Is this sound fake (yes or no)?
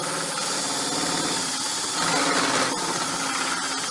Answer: no